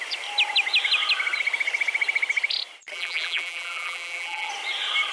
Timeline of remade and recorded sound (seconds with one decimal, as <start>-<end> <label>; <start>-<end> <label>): 0.0-2.9 recorded; 2.9-4.5 remade; 4.5-5.1 recorded